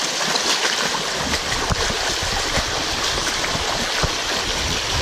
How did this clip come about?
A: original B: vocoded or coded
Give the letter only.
A